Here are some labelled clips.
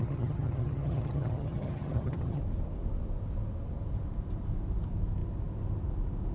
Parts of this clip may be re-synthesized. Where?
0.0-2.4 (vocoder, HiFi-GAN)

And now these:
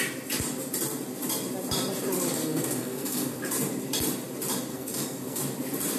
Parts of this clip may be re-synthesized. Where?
2.4-3.4 (codec, SNAC); 4.7-5.4